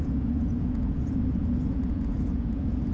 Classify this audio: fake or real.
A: fake